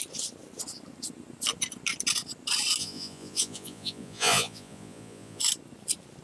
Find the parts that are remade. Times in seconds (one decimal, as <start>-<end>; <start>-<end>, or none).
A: 2.8-5.4